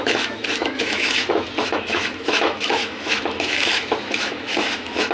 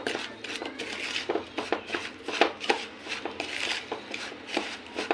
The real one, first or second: second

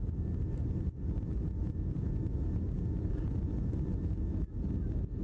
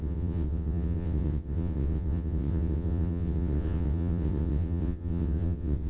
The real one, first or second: first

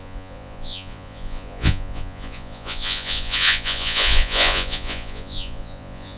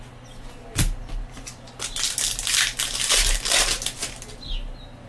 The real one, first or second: second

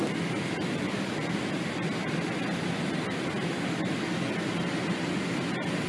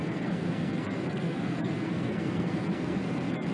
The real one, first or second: first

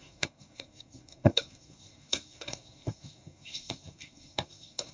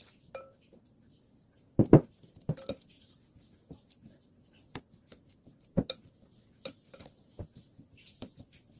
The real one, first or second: second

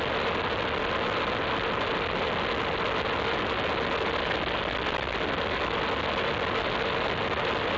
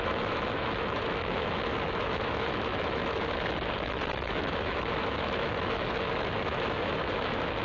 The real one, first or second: first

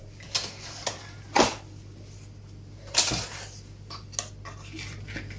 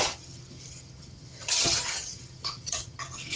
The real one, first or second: first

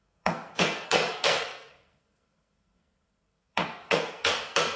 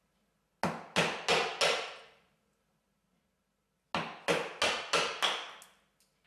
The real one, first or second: second